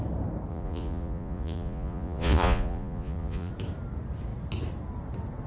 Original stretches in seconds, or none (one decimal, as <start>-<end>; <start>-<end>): 0.0-0.5; 3.5-5.5